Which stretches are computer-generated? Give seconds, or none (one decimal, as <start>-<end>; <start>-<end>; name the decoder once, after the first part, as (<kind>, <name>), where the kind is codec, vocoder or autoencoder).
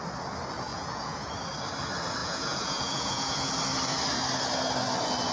0.7-1.3 (vocoder, Vocos); 2.2-3.5